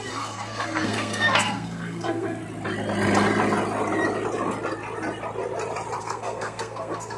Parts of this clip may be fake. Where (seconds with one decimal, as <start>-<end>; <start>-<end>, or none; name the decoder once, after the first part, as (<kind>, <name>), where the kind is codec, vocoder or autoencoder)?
0.0-2.4 (codec, SNAC); 6.0-7.2